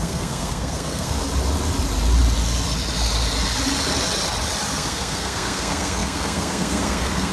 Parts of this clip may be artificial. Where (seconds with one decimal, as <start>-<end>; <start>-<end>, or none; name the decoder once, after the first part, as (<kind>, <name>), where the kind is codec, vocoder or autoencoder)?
0.0-1.2 (codec, SNAC); 4.7-7.3

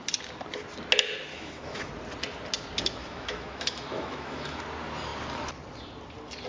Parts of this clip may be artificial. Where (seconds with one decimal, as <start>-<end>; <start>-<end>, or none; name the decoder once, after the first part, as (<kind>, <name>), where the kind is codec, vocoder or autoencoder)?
1.3-1.9 (autoencoder, DAC-VAE); 3.0-4.6

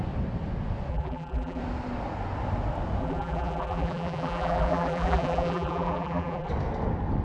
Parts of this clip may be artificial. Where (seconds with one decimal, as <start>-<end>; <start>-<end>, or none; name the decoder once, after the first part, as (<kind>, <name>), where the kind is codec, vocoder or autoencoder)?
0.9-1.6 (vocoder, BigVGAN v2); 3.0-6.5

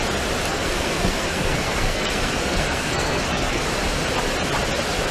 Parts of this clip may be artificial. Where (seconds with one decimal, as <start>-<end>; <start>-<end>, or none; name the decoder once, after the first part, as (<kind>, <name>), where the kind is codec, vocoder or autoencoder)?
0.5-3.6 (codec, SNAC)

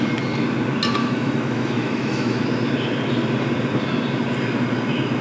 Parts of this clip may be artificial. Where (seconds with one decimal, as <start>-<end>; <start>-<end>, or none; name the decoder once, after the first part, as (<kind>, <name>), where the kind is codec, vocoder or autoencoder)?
1.0-2.4 (autoencoder, DAC-VAE)

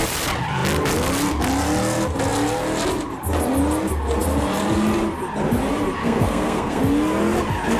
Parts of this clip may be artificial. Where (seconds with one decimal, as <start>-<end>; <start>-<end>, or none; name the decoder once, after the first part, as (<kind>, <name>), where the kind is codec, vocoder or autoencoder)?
6.0-6.8 (codec, SNAC)

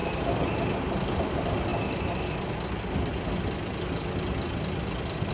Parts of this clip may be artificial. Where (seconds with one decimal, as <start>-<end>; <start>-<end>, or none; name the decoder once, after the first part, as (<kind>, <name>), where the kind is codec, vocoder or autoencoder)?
none